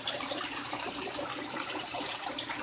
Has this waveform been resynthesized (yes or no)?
yes